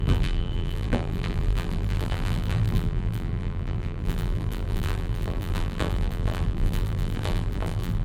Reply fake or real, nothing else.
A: fake